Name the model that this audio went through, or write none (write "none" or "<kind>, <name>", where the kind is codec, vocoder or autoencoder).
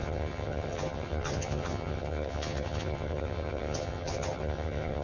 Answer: vocoder, HiFi-GAN